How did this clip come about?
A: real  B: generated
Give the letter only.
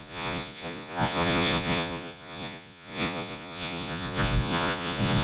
B